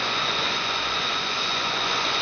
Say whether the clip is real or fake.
fake